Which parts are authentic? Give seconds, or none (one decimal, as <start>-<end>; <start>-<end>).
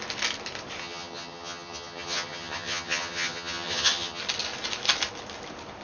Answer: 0.0-0.8; 4.2-5.8